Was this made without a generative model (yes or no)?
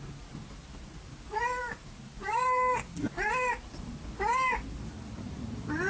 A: yes